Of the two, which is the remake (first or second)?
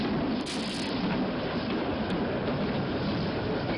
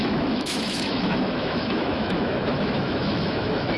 second